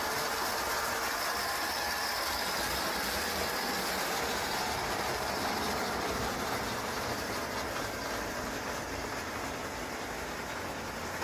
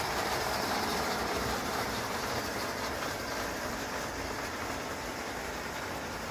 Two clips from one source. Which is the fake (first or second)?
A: second